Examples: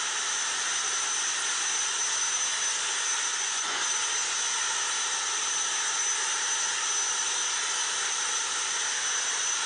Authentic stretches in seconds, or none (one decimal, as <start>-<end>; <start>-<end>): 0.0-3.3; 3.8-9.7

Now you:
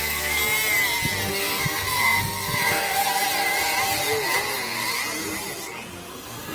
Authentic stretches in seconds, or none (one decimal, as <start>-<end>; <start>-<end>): 0.4-1.3; 3.0-6.1

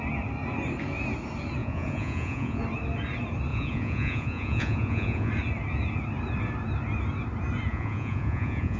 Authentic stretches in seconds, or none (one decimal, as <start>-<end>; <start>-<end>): 0.0-1.6; 2.6-3.5; 5.3-7.7